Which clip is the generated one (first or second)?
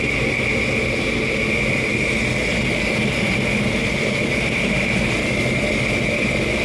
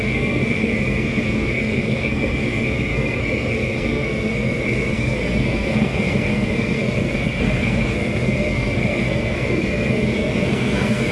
second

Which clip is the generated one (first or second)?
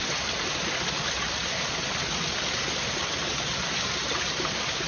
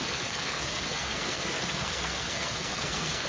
second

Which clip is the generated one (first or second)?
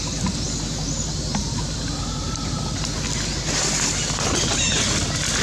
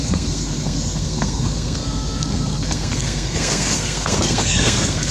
second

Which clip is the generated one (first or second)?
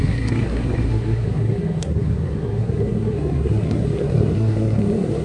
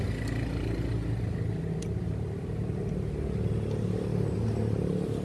first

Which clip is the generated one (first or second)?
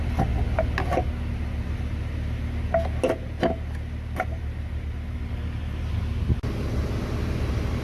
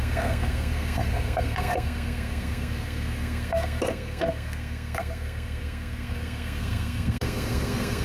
second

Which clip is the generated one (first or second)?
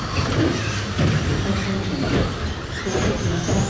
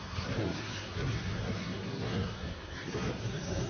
second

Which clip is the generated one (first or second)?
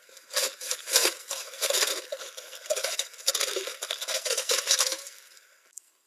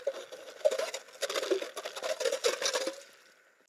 first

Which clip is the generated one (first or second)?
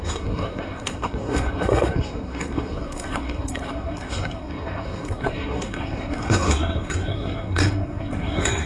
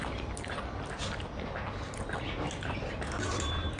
first